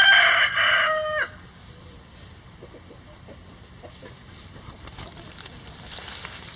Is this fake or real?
real